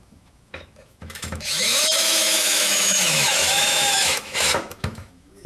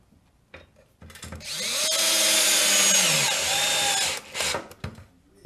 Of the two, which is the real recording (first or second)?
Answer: second